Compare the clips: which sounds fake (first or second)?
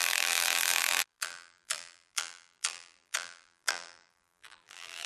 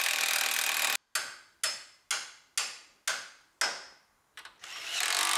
first